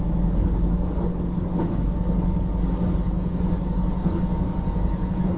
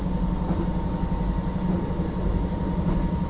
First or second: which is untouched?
second